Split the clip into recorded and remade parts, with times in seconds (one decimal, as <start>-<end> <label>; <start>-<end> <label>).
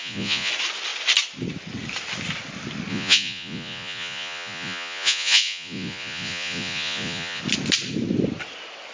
0.0-0.5 remade; 0.5-2.9 recorded; 2.9-7.4 remade; 7.4-8.9 recorded